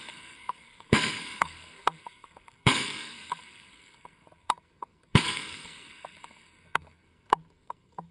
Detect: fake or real fake